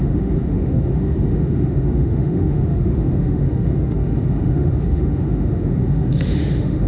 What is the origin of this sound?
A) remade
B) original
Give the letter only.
A